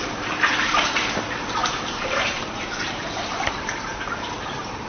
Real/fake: fake